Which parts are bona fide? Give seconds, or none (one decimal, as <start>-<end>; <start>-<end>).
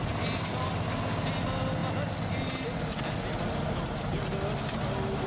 0.0-5.3